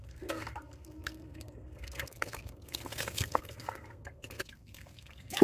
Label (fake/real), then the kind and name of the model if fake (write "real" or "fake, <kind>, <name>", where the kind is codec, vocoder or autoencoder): fake, codec, SNAC